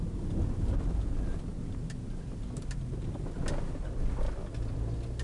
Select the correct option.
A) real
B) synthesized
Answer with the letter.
A